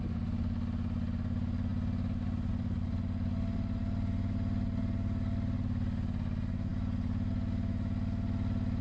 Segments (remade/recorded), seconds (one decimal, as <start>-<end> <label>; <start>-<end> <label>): 0.0-8.8 recorded